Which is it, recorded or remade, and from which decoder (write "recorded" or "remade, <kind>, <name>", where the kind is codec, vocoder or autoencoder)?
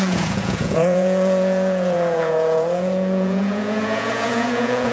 remade, vocoder, Vocos